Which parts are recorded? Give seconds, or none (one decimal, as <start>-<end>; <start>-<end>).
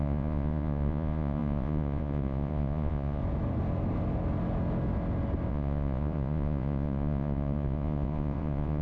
3.2-5.5